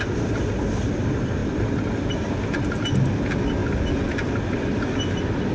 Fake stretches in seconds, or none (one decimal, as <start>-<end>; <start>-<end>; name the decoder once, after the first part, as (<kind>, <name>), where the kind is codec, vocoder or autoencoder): 1.4-2.3 (vocoder, BigVGAN v2)